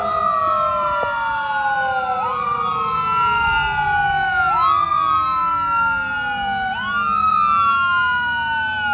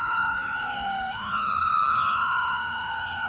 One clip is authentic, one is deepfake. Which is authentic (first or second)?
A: first